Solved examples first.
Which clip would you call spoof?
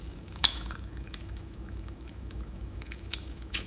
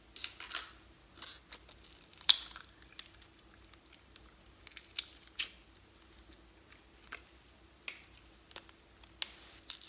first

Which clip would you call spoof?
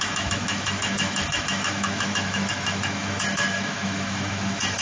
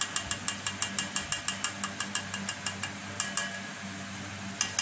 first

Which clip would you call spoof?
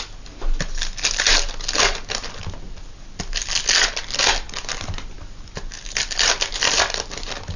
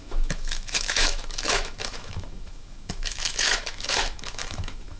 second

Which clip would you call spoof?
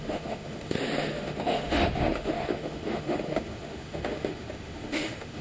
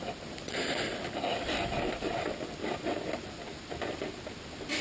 first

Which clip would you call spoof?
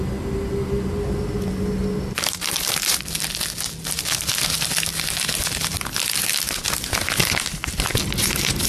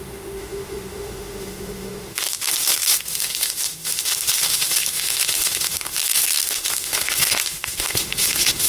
second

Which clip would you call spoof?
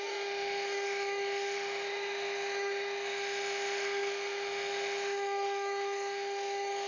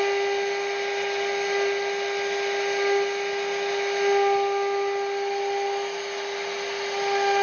first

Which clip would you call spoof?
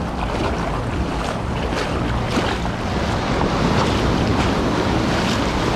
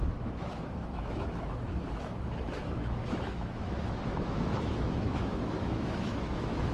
second